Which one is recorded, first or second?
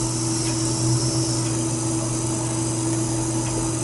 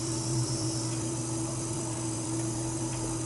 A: first